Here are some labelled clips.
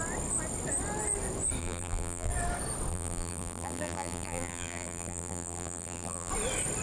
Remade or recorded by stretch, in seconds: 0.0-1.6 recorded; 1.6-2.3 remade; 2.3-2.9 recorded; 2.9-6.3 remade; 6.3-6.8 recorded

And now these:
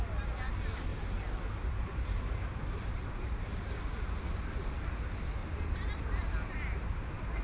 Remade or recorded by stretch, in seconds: 0.0-0.9 recorded; 0.9-3.7 remade; 3.7-5.4 recorded; 5.4-6.0 remade; 6.0-7.4 recorded

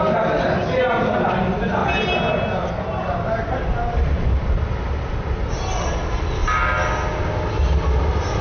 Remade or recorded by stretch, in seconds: 0.0-4.3 recorded; 4.3-5.1 remade; 5.1-8.4 recorded

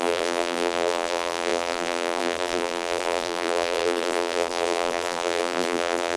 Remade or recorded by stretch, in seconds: 0.0-6.2 remade